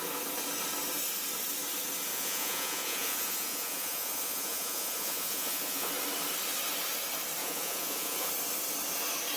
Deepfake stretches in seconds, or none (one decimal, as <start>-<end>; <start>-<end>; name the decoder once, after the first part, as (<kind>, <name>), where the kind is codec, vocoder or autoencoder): 2.1-5.9 (vocoder, Vocos); 7.4-8.3